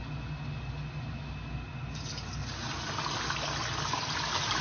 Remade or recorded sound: recorded